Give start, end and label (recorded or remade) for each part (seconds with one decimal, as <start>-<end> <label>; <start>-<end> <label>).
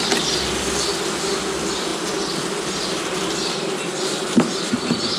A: 0.0-5.2 recorded